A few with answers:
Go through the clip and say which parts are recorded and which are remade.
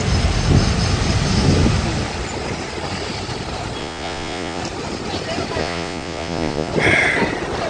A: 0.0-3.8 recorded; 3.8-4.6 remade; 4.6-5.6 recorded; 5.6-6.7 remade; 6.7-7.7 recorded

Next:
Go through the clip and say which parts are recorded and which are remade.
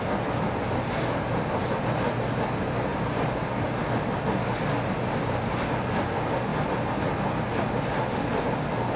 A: 0.0-9.0 recorded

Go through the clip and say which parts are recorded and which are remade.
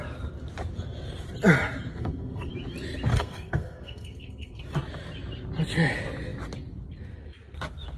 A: 0.0-1.9 recorded; 1.9-2.5 remade; 2.5-3.1 recorded; 3.1-4.6 remade; 4.6-8.0 recorded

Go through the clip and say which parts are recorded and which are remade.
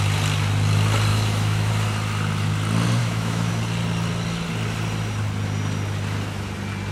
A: 0.0-1.1 recorded; 1.1-1.7 remade; 1.7-3.0 recorded; 3.0-3.5 remade; 3.5-6.9 recorded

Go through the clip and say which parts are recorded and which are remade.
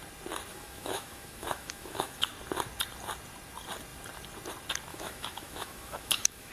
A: 0.0-0.5 recorded; 0.5-2.3 remade; 2.3-4.9 recorded; 4.9-6.5 remade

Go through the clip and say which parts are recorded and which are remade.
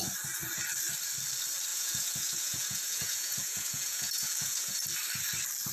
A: 0.0-1.7 recorded; 1.7-4.8 remade; 4.8-5.7 recorded